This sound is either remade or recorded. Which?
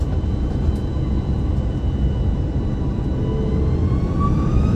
recorded